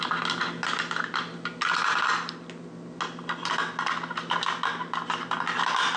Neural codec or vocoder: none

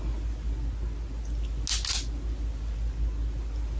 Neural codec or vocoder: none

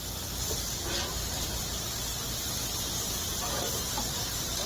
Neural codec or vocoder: none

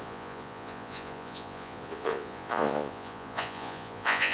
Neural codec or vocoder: vocoder, Vocos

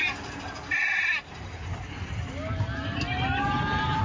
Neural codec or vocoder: none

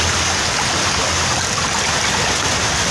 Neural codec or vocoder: none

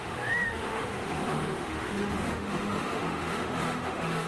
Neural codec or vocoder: autoencoder, DAC-VAE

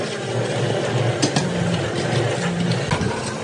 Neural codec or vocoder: none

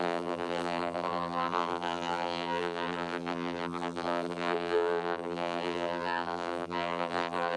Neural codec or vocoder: vocoder, BigVGAN v2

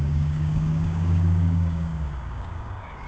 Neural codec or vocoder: codec, DAC